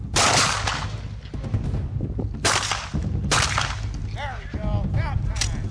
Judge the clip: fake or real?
real